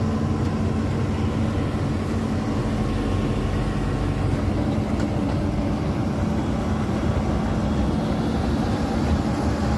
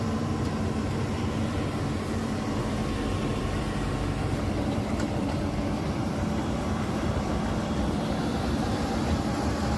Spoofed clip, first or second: second